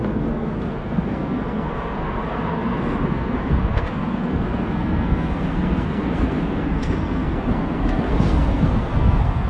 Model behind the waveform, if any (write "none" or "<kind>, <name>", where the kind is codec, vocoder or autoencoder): codec, SNAC